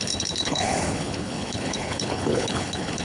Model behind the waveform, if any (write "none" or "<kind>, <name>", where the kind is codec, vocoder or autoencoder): codec, HILCodec